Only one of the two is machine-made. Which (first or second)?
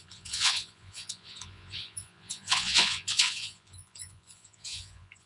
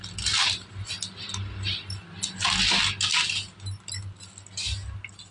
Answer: first